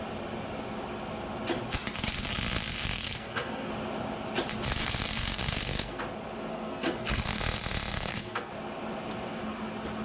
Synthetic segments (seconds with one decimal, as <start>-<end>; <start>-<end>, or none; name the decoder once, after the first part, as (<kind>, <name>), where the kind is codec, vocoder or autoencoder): 2.8-3.7 (codec, SNAC); 4.8-6.0; 6.5-7.4; 7.9-8.5